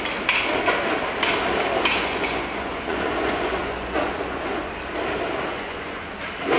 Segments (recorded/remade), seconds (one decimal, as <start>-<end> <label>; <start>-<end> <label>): 0.0-2.0 recorded; 2.0-4.8 remade; 4.8-5.5 recorded; 5.5-6.1 remade; 6.1-6.6 recorded